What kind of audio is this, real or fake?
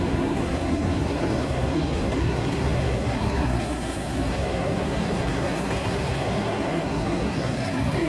fake